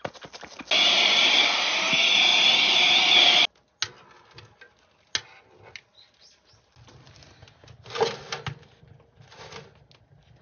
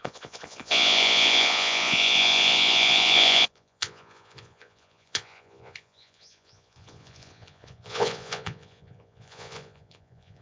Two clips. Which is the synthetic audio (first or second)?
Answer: second